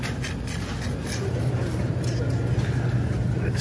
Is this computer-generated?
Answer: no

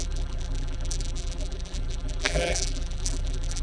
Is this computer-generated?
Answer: yes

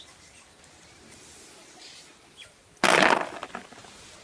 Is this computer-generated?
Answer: no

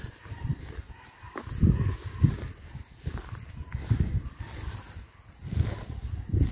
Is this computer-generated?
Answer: no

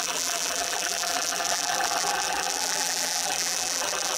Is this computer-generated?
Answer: yes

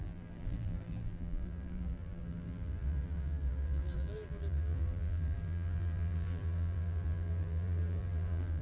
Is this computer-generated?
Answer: yes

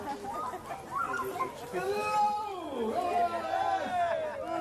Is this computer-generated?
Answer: no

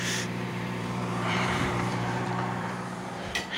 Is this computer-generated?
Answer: yes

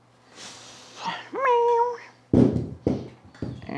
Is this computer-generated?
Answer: no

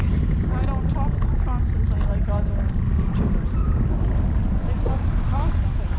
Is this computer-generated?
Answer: no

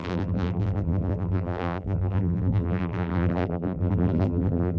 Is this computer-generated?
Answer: yes